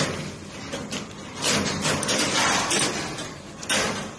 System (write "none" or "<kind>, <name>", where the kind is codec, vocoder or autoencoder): none